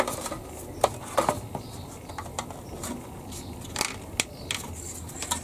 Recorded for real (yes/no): yes